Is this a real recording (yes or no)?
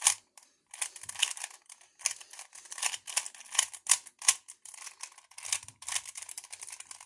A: yes